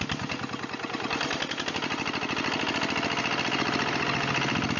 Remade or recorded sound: recorded